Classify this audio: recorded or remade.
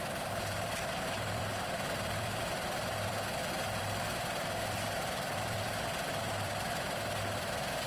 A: remade